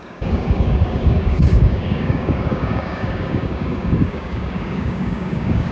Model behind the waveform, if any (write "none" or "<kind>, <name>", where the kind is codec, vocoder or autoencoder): codec, DAC